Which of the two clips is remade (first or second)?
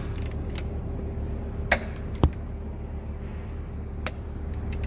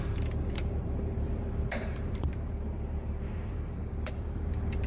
second